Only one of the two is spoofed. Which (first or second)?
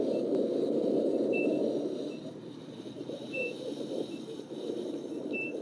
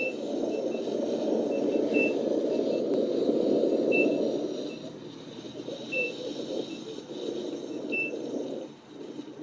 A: first